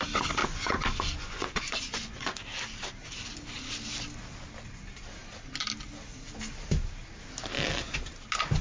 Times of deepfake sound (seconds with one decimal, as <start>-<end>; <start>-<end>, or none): 0.4-2.4